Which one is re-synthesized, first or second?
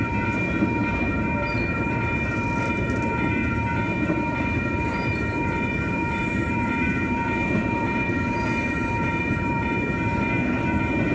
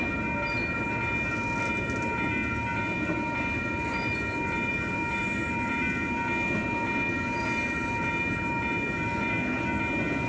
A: first